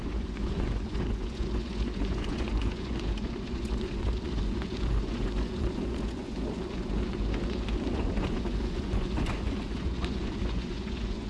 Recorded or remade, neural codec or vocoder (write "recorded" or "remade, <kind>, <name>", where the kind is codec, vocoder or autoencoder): remade, vocoder, Vocos